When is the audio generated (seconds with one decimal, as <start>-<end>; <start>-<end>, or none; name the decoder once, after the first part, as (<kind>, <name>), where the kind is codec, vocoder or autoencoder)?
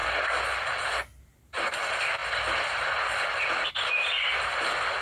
none